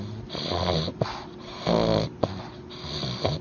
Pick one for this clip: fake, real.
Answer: real